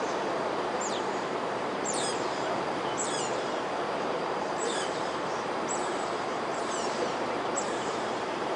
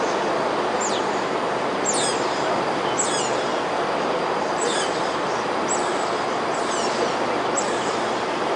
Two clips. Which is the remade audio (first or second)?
first